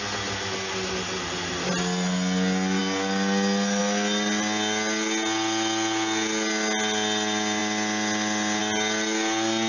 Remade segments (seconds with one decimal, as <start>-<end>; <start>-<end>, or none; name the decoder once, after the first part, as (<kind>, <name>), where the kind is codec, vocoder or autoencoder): none